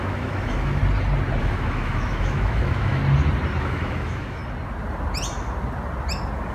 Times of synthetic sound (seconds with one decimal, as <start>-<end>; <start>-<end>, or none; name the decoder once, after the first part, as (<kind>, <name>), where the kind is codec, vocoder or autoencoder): 0.0-0.8 (autoencoder, DAC-VAE); 1.4-3.0; 3.6-4.4